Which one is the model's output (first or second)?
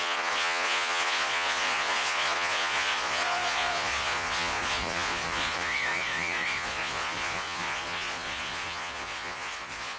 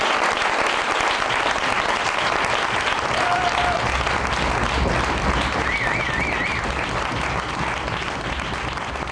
first